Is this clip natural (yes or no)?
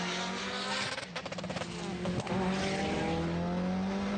yes